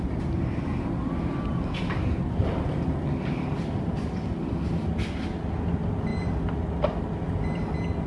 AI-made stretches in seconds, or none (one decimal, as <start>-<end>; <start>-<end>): none